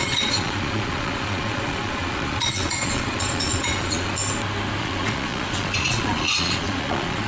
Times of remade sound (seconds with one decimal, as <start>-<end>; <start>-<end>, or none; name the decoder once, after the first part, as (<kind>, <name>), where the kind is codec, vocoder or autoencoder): 0.0-4.2 (vocoder, Vocos); 4.8-7.3